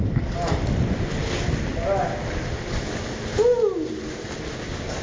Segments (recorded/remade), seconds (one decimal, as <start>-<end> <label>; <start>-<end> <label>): 0.0-5.0 recorded